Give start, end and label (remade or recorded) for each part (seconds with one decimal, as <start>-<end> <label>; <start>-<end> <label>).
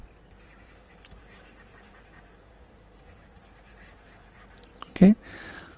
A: 0.0-5.8 remade